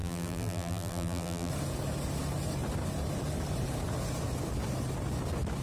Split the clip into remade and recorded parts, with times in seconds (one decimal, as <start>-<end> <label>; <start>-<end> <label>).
0.0-1.5 remade; 1.5-5.6 recorded